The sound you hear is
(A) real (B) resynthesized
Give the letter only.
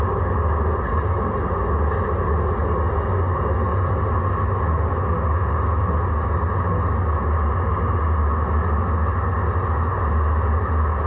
A